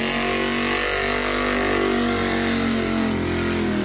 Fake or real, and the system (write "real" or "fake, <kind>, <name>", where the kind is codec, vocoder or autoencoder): real